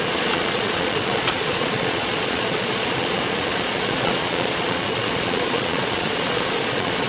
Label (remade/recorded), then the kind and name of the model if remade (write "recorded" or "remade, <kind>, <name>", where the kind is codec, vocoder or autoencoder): remade, vocoder, Vocos